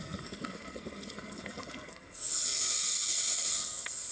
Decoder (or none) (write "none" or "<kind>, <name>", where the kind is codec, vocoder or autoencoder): codec, SNAC